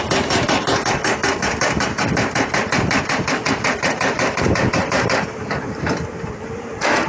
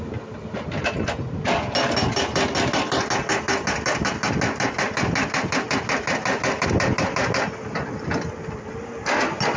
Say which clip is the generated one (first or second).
first